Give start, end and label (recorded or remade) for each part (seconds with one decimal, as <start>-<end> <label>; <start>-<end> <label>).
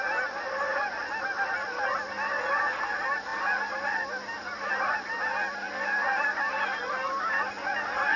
0.0-8.2 recorded